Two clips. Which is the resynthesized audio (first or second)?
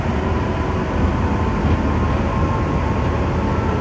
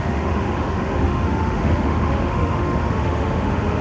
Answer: second